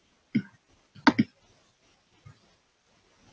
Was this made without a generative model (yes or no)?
yes